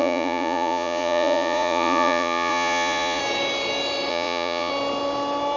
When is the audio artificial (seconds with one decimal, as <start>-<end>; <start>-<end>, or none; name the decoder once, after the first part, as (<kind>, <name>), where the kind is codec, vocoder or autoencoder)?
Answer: 0.0-3.2 (vocoder, Vocos); 4.1-4.7